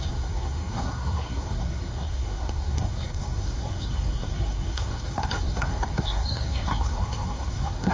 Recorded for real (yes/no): no